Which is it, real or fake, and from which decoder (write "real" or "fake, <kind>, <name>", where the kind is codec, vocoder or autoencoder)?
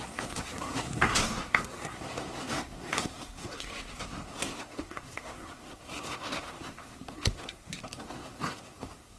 fake, codec, SNAC